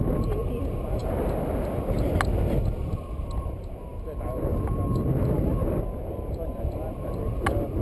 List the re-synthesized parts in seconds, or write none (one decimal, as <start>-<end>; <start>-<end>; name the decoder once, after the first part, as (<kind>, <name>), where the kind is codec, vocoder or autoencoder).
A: none